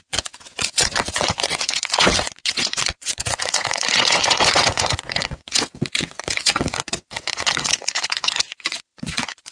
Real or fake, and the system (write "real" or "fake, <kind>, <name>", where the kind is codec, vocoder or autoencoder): fake, vocoder, WaveNeXt